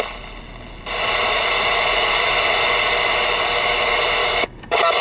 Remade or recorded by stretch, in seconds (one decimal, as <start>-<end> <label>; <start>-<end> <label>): 0.0-4.2 recorded; 4.2-5.0 remade